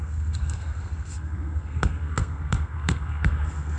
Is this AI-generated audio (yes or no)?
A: yes